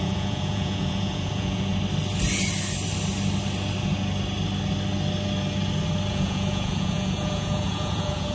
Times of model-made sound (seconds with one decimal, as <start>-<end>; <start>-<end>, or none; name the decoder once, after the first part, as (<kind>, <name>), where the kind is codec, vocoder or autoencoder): 0.0-1.7 (vocoder, Vocos); 6.1-8.3